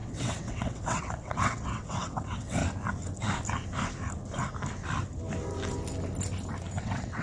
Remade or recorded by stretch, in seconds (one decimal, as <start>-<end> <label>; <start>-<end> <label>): 0.0-2.6 remade; 2.6-6.8 recorded; 6.8-7.2 remade